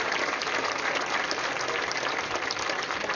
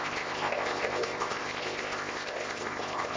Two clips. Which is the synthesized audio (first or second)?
second